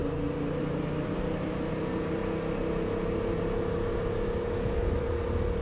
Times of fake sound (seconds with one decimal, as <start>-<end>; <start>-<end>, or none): 0.0-2.2; 5.0-5.6